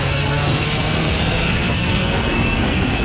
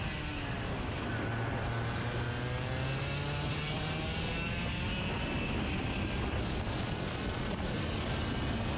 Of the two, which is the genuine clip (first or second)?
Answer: second